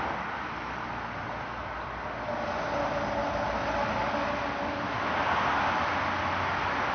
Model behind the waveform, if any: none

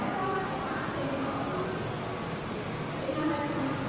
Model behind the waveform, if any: none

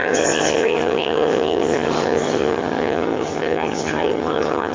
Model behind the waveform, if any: vocoder, HiFi-GAN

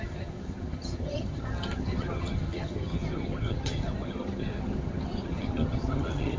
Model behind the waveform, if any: vocoder, HiFi-GAN